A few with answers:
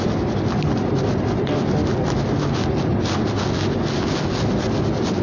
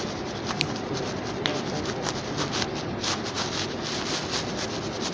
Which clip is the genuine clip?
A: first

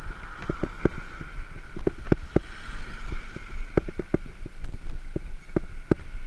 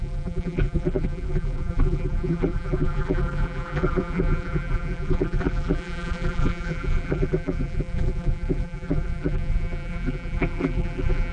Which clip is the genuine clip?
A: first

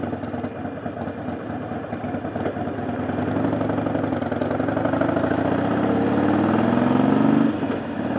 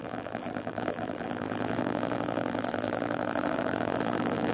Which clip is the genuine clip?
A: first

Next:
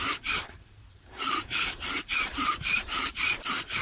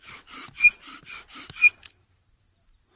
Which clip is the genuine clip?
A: second